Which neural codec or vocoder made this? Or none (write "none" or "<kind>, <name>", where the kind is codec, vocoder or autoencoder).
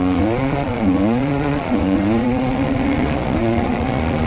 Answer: vocoder, Vocos